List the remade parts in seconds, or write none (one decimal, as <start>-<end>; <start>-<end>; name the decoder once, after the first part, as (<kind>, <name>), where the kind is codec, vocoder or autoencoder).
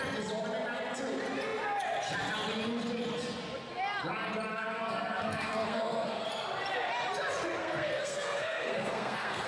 4.5-6.3 (codec, SNAC); 7.6-9.5